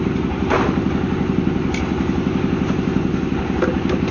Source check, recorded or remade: recorded